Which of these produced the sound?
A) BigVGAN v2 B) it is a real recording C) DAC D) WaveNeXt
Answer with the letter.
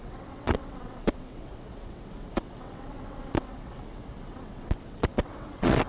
D